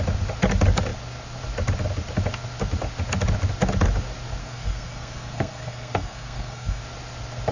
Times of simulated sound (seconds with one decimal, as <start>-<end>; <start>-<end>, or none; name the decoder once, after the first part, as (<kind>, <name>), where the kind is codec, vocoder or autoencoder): 4.4-6.8 (codec, SNAC)